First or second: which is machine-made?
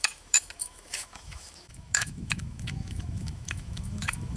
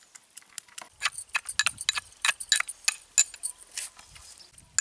first